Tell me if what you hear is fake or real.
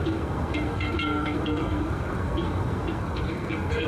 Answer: fake